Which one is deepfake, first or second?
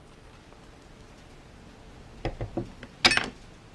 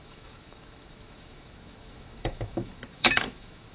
second